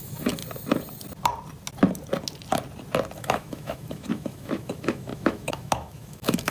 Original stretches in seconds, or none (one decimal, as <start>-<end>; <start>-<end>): 0.4-3.2